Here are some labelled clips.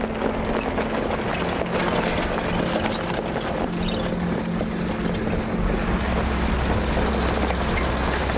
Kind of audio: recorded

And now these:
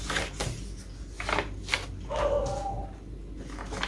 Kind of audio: recorded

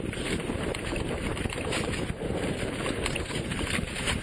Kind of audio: remade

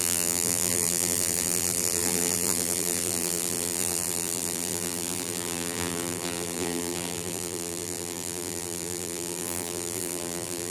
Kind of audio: remade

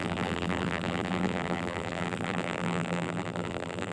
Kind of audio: remade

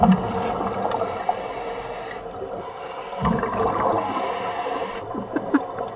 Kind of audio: recorded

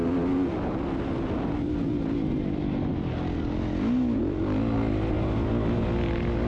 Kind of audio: recorded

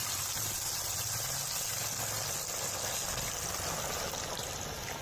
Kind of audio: recorded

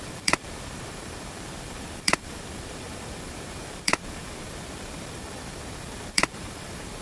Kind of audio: remade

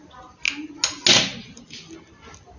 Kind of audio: recorded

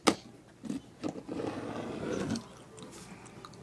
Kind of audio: recorded